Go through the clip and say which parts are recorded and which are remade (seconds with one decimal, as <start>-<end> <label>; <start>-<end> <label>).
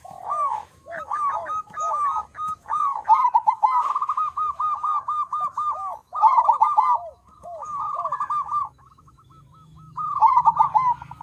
0.0-11.2 remade